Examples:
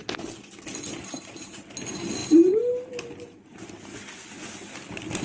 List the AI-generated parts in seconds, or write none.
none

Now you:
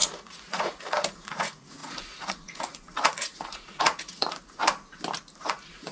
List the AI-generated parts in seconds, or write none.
0.0-4.6 (vocoder, Vocos); 5.4-5.9

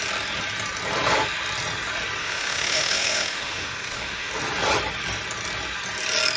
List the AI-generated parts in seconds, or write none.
2.2-4.3 (autoencoder, DAC-VAE)

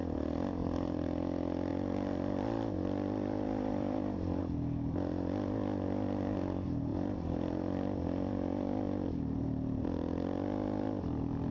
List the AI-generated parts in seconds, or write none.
1.7-4.4 (vocoder, BigVGAN v2); 6.9-9.8

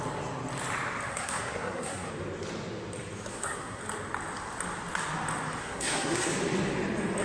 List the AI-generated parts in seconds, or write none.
1.1-2.1 (codec, SNAC); 3.3-3.8; 5.6-6.3

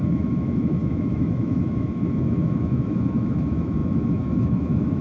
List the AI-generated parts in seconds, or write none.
0.0-5.0 (autoencoder, DAC-VAE)

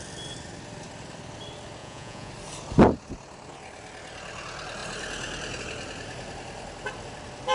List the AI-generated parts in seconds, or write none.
1.8-2.3 (vocoder, Vocos)

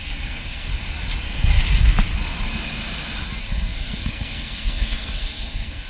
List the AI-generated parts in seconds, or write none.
0.0-0.7 (codec, SNAC); 1.2-1.6; 3.4-5.9